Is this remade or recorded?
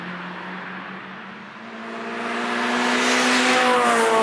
recorded